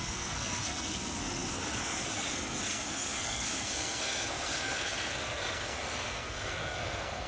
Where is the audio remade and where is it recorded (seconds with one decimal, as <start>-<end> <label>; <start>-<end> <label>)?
0.0-7.3 remade